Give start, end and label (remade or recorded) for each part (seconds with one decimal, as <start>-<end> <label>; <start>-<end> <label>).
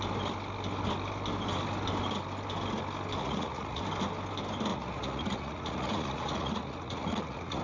0.0-3.2 recorded; 3.2-3.8 remade; 3.8-4.7 recorded; 4.7-7.6 remade